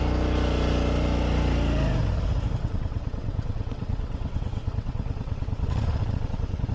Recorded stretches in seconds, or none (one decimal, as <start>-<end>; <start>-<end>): 0.0-2.6